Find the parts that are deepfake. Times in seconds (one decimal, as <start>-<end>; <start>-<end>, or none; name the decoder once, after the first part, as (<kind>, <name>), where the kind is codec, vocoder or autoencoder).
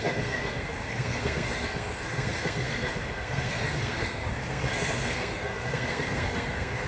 0.0-6.9 (codec, SNAC)